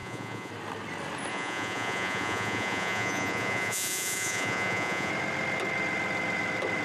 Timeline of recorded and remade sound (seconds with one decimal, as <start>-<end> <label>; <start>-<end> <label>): 0.0-0.5 remade; 0.5-1.3 recorded; 1.3-5.1 remade; 5.1-6.8 recorded